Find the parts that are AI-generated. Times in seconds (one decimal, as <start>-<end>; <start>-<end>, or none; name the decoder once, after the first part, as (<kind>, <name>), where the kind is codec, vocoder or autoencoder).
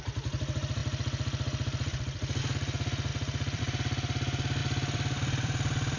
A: 3.1-3.6 (vocoder, BigVGAN v2); 4.6-6.0